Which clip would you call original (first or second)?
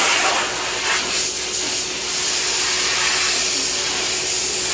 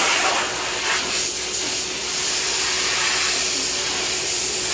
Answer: first